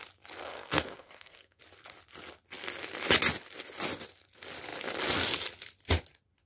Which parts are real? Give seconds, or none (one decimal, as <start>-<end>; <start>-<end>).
0.0-0.5; 1.6-6.5